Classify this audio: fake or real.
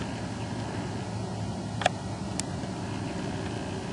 real